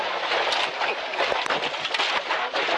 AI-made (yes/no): no